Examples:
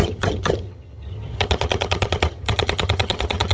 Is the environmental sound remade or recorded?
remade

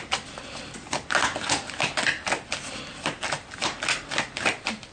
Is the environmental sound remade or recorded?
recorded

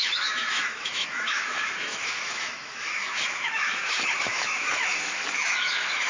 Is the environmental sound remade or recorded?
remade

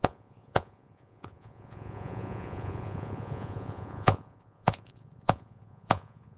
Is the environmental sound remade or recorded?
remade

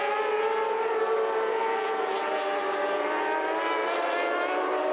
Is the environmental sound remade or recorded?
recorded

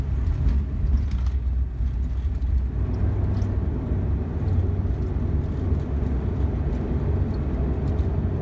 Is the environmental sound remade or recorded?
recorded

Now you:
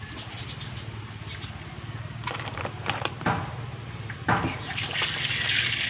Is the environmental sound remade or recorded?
recorded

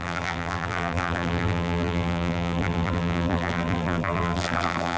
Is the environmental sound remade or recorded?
remade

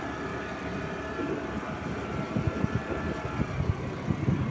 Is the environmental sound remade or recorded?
recorded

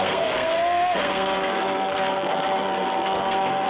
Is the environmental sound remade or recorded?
remade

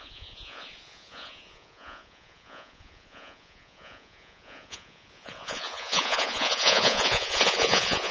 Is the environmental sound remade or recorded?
remade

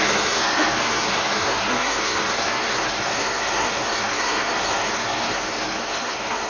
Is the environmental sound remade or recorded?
remade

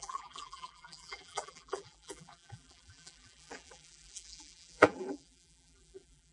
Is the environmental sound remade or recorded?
remade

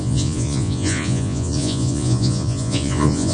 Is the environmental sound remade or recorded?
remade